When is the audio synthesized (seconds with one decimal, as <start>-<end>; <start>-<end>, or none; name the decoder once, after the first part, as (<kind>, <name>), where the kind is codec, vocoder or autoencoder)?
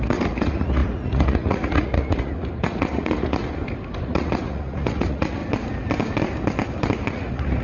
0.0-3.4 (vocoder, Vocos); 4.0-5.4; 7.1-7.6